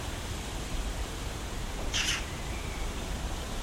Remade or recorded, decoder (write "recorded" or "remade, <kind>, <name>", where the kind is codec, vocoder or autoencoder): remade, vocoder, BigVGAN v2